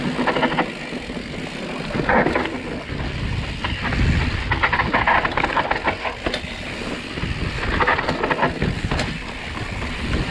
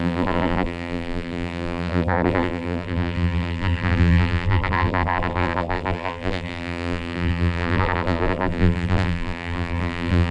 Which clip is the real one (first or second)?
first